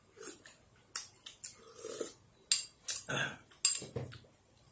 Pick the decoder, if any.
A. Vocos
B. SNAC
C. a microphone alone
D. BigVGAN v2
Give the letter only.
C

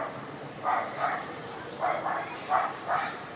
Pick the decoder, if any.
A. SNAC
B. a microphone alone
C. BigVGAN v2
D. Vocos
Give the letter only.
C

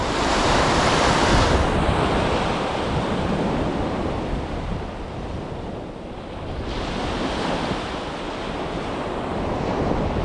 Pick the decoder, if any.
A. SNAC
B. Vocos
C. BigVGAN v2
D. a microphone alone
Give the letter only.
C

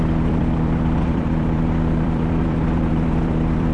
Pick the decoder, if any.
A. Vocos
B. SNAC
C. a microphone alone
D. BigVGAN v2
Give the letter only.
D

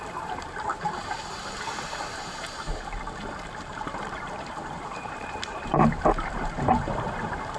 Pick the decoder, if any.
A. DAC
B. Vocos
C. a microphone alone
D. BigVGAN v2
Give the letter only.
D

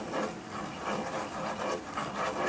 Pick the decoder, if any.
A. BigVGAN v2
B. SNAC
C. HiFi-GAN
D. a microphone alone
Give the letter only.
D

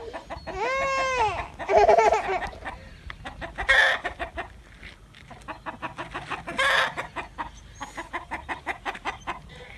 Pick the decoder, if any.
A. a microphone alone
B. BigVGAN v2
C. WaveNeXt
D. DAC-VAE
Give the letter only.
A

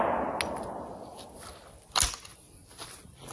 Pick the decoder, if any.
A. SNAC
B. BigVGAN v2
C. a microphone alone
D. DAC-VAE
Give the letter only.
C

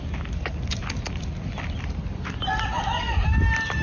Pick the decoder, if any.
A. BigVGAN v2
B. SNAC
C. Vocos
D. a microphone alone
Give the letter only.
D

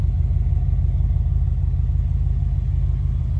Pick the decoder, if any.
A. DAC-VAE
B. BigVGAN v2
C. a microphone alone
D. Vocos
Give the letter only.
C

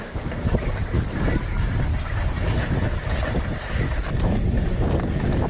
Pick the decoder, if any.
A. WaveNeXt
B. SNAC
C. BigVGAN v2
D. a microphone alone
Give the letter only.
C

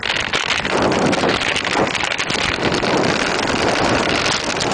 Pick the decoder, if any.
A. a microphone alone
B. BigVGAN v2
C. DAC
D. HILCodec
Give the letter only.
A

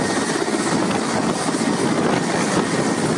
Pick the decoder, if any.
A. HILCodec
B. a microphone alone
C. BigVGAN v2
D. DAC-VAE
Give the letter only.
C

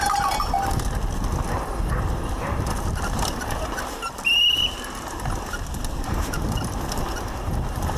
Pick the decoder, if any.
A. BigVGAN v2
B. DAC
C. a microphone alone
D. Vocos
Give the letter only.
C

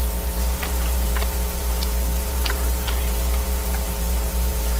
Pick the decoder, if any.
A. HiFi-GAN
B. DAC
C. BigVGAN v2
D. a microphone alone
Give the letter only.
C